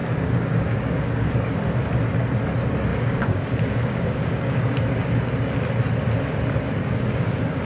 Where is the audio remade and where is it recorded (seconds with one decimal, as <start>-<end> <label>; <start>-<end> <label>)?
0.0-1.5 remade; 1.5-2.9 recorded; 2.9-5.3 remade; 5.3-6.8 recorded; 6.8-7.6 remade